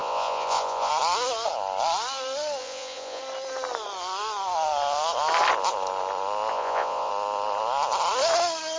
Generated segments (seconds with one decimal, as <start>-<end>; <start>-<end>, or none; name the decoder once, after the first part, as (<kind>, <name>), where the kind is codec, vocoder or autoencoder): 0.0-0.9 (vocoder, Vocos); 2.6-3.2; 6.5-7.1